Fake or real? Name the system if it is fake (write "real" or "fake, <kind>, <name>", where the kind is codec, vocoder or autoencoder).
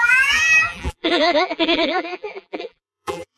fake, vocoder, BigVGAN v2